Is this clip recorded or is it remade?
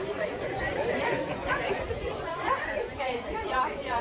remade